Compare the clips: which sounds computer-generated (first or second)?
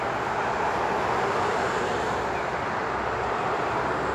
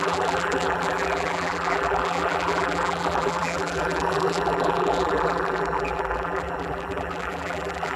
second